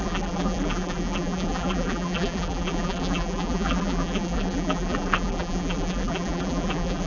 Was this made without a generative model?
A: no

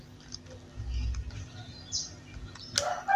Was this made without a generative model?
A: yes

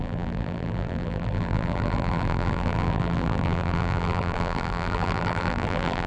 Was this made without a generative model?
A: no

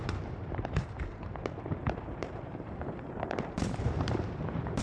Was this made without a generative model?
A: no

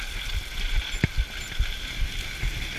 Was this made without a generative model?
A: yes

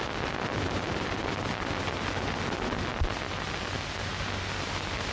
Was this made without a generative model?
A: yes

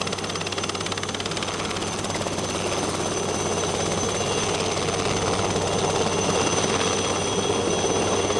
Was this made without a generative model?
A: yes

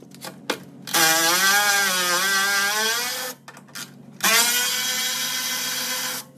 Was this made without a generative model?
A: yes